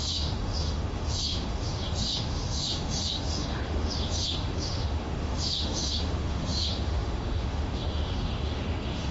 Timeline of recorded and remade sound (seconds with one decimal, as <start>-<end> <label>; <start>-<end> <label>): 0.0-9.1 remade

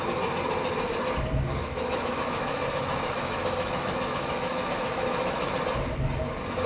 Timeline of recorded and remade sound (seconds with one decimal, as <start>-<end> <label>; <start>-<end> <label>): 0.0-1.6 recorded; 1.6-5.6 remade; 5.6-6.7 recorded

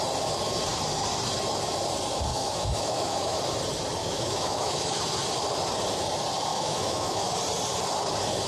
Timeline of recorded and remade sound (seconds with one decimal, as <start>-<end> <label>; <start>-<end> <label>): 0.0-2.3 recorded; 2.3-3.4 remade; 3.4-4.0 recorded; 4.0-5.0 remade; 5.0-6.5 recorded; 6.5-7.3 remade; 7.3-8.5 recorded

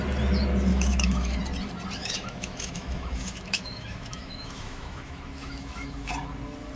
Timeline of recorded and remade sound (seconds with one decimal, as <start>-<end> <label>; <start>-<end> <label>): 0.0-0.7 recorded; 0.7-1.4 remade; 1.4-2.0 recorded; 2.0-6.1 remade; 6.1-6.8 recorded